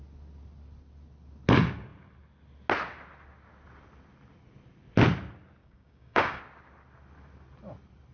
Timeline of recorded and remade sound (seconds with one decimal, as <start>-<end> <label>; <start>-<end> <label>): 0.0-5.6 recorded; 5.6-6.4 remade; 6.4-8.1 recorded